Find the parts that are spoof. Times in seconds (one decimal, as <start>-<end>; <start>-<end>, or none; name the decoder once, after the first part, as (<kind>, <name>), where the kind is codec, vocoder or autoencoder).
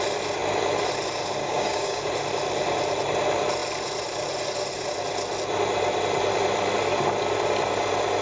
1.4-2.0 (codec, DAC)